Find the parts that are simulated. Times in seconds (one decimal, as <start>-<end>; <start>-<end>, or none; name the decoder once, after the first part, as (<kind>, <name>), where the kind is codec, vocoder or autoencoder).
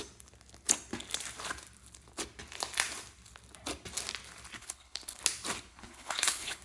4.6-5.2 (codec, HILCodec); 5.7-6.6